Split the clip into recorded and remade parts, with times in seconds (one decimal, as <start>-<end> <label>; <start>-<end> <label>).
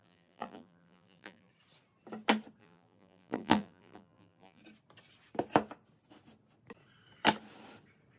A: 0.0-1.5 remade; 1.5-2.6 recorded; 2.6-4.6 remade; 4.6-8.2 recorded